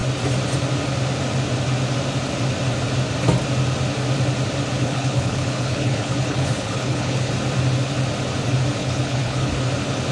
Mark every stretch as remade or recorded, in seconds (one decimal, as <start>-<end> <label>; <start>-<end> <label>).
0.0-4.8 recorded; 4.8-7.3 remade; 7.3-8.8 recorded; 8.8-9.5 remade; 9.5-10.1 recorded